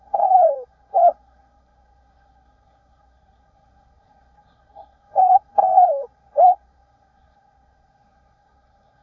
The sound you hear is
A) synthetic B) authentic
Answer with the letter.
A